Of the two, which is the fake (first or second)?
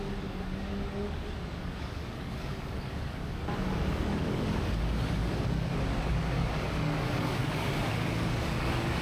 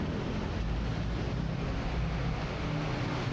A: first